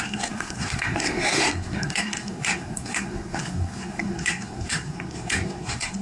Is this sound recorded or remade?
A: remade